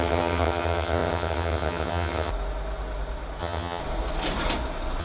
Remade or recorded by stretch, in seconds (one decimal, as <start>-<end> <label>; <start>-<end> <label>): 0.0-2.3 remade; 2.3-3.4 recorded; 3.4-3.8 remade; 3.8-5.0 recorded